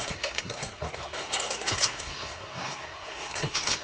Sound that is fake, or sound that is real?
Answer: fake